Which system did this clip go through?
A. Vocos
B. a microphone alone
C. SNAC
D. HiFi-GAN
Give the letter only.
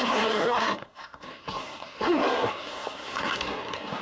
C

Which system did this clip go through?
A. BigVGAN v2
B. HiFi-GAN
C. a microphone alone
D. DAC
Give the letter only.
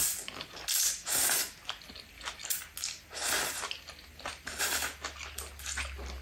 C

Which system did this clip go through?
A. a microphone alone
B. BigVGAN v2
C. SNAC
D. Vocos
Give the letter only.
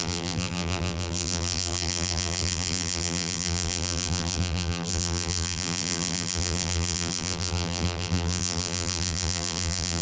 B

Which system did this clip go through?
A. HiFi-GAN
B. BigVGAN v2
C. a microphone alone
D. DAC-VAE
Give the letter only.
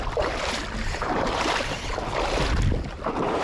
C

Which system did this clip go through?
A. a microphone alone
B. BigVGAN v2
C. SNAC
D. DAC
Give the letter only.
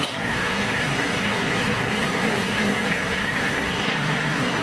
C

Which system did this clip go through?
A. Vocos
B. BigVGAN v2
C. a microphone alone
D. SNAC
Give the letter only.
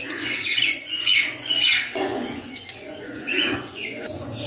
A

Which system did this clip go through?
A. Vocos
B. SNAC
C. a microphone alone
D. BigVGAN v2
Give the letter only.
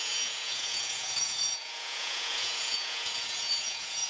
A